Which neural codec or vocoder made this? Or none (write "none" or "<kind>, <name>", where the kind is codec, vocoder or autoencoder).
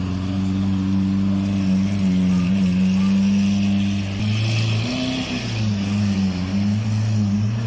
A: none